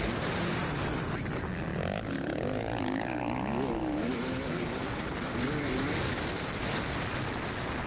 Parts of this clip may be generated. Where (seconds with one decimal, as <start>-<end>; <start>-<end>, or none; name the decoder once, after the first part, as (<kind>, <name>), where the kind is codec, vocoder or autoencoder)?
none